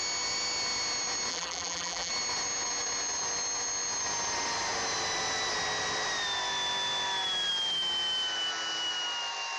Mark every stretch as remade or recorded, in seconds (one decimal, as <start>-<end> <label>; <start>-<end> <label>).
0.0-1.3 recorded; 1.3-2.1 remade; 2.1-9.6 recorded